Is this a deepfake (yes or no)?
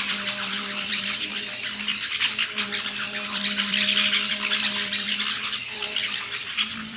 yes